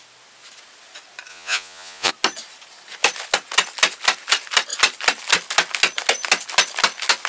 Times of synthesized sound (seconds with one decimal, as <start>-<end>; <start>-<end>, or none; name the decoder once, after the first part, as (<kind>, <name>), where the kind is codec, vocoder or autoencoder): 1.3-2.1 (vocoder, Vocos)